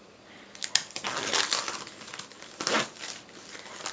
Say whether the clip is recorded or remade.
recorded